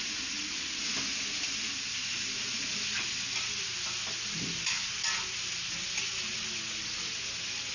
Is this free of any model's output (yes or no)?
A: yes